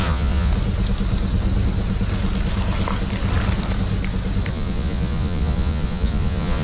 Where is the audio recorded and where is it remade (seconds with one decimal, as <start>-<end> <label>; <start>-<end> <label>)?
0.0-0.5 remade; 0.5-4.5 recorded; 4.5-6.6 remade